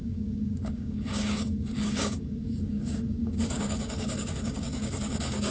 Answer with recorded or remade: remade